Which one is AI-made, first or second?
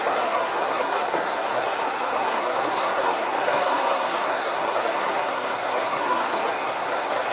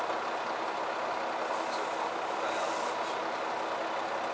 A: first